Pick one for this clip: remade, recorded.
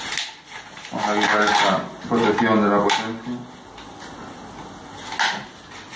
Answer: recorded